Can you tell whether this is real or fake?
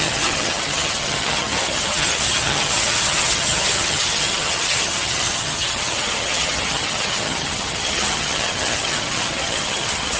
fake